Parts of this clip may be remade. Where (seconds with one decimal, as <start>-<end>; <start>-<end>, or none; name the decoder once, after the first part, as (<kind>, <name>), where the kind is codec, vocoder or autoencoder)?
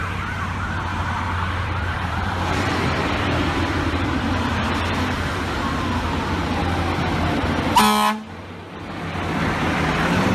0.9-6.0 (vocoder, BigVGAN v2)